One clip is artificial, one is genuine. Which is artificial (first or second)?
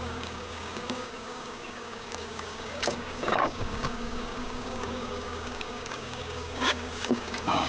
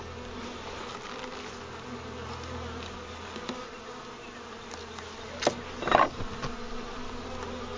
first